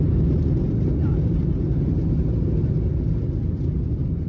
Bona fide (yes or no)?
yes